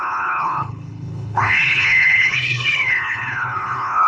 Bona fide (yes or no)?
no